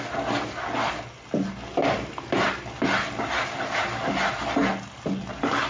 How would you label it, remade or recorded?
recorded